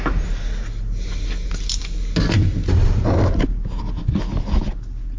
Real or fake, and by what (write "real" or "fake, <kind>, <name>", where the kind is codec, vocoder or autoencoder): real